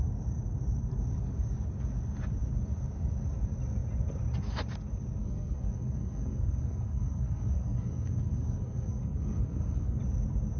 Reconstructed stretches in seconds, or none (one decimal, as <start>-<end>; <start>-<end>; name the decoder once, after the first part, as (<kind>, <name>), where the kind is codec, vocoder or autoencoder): 5.2-10.0 (codec, SNAC)